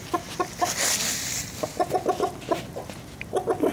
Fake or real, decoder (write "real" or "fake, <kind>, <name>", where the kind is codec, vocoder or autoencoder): real